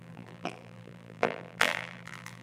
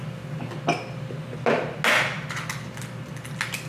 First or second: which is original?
second